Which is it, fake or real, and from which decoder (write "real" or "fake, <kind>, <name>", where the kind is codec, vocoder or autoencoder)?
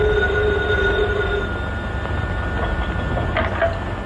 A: real